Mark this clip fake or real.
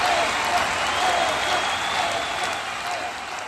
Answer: real